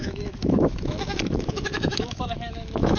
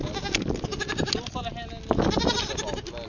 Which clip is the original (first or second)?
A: second